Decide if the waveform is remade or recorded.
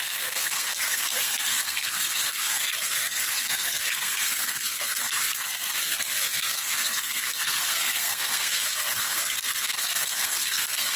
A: remade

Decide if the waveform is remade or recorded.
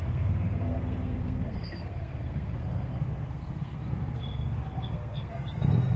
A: remade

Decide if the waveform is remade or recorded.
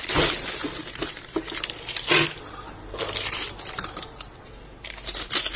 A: recorded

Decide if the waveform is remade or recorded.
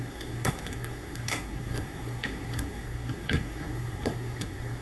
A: remade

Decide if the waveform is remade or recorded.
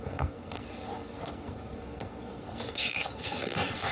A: remade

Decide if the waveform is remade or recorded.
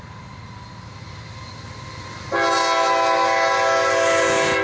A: recorded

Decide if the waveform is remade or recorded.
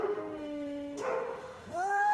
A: remade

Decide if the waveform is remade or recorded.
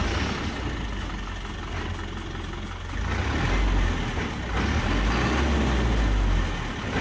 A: recorded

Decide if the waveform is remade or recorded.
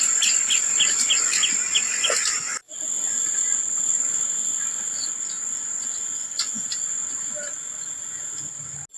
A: recorded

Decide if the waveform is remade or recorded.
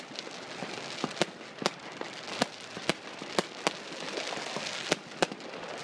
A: recorded